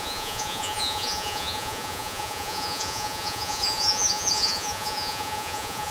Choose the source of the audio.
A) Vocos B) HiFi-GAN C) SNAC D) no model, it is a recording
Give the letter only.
A